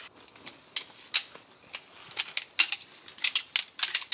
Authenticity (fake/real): real